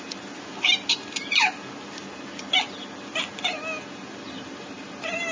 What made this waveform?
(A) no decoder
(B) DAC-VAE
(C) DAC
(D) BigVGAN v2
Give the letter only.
A